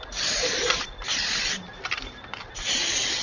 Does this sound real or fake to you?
real